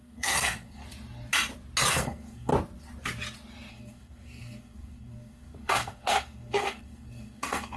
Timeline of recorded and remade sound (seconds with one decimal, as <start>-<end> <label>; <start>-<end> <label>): 0.0-0.8 remade; 0.8-1.9 recorded; 1.9-2.5 remade; 2.5-3.7 recorded; 3.7-7.8 remade